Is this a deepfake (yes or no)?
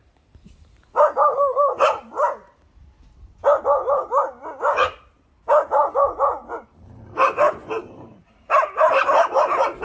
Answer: no